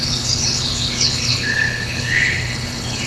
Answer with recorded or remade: remade